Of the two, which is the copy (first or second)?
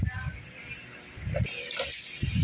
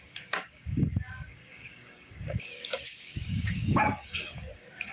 second